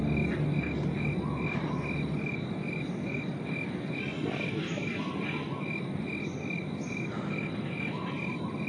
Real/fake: real